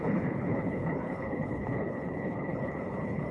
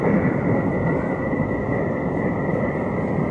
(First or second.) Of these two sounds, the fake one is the first